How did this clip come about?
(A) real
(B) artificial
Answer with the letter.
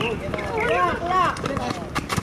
A